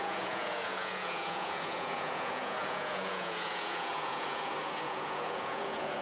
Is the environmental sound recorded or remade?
remade